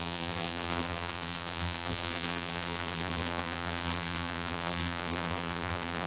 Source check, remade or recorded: remade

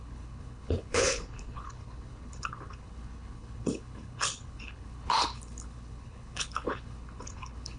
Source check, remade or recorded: remade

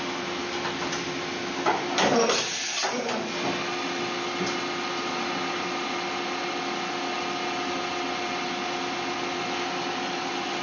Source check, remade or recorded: recorded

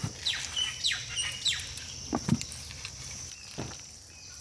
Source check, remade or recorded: recorded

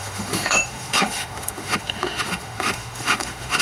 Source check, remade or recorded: remade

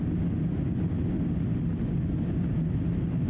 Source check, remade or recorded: recorded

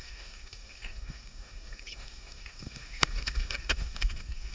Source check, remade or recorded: remade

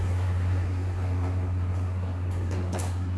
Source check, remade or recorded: remade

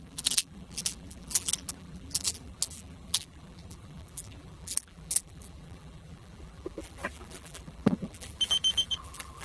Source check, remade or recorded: remade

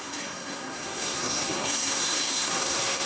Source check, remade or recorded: remade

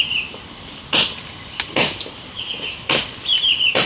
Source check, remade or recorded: remade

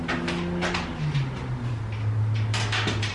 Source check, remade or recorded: recorded